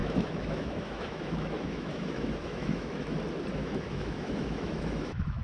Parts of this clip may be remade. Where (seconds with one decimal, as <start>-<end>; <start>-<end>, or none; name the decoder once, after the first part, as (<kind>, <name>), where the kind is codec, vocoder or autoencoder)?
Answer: 0.0-3.2 (autoencoder, DAC-VAE); 3.6-5.4